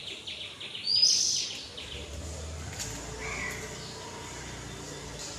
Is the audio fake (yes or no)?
no